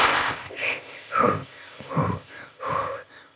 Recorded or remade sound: remade